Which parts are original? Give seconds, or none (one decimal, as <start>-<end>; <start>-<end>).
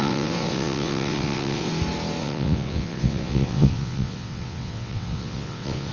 1.7-2.2